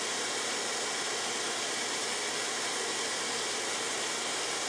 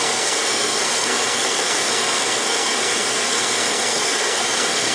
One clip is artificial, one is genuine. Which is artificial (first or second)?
second